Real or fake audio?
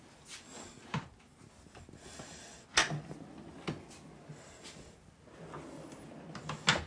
real